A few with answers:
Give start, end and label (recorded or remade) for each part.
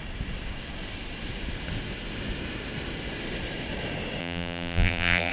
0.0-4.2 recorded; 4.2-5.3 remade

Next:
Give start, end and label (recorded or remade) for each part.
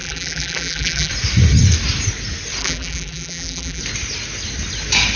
0.0-1.1 remade; 1.1-2.6 recorded; 2.6-3.8 remade; 3.8-5.2 recorded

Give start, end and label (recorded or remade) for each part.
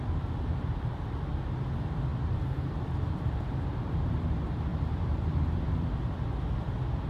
0.0-2.1 recorded; 2.1-4.0 remade; 4.0-4.7 recorded; 4.7-5.4 remade; 5.4-7.1 recorded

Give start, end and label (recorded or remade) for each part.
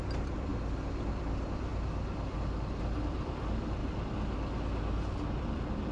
0.0-0.5 remade; 0.5-1.1 recorded; 1.1-1.7 remade; 1.7-2.8 recorded; 2.8-3.8 remade; 3.8-5.3 recorded; 5.3-5.9 remade